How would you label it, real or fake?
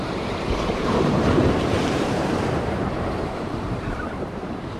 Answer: fake